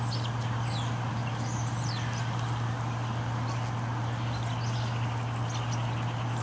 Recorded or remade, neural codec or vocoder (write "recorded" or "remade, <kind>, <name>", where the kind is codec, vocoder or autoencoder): recorded